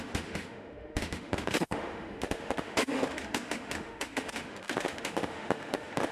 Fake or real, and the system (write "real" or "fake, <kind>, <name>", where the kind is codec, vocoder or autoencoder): fake, autoencoder, DAC-VAE